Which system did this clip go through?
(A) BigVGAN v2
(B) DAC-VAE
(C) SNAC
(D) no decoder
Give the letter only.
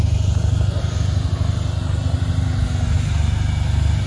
D